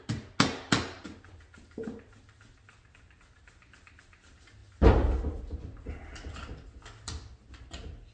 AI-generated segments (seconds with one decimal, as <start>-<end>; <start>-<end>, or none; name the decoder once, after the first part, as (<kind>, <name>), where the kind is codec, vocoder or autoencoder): none

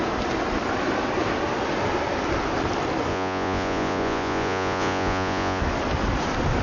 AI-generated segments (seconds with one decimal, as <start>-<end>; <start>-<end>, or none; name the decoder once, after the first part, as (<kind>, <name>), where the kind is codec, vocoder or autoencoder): 3.1-5.6 (vocoder, Vocos)

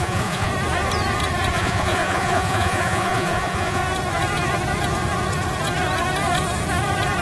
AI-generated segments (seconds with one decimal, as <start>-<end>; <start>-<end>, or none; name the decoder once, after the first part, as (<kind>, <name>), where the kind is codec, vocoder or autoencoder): 0.0-0.5 (vocoder, Vocos); 1.5-3.8

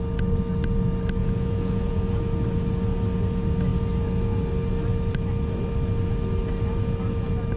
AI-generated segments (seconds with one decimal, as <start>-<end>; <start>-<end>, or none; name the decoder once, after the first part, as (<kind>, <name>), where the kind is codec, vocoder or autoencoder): 1.2-2.2 (vocoder, Vocos)

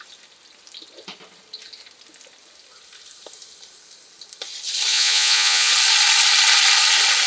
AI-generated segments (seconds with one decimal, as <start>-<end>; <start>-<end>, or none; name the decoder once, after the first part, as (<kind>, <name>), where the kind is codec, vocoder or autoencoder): 4.9-5.7 (vocoder, Vocos)